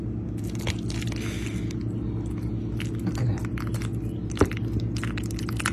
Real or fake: real